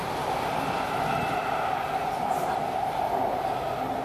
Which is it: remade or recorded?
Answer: recorded